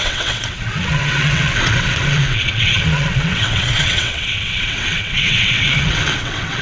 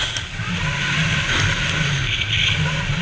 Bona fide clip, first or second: second